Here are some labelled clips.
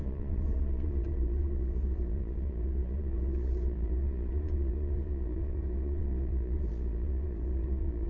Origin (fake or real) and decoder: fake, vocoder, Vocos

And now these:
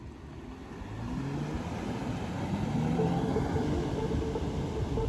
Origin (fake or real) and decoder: real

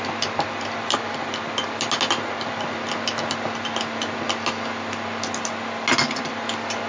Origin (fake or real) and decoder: real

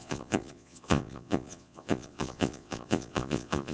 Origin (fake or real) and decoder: fake, vocoder, Vocos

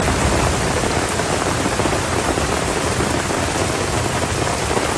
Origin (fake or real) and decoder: real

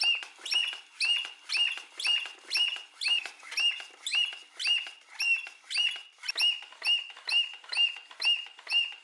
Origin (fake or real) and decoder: real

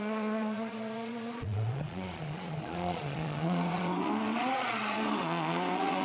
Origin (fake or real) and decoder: fake, vocoder, Vocos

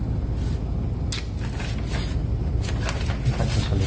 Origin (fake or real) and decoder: real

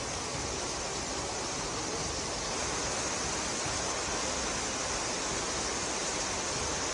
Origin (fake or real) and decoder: real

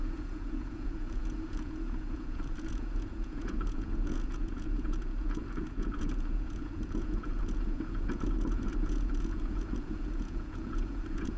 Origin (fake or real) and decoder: fake, vocoder, Vocos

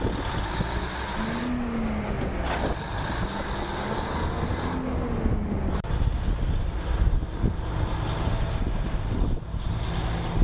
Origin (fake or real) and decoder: real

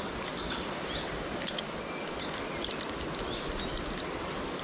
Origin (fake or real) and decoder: real